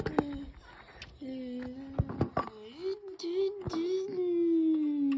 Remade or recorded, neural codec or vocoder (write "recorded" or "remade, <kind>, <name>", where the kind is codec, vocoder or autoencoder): recorded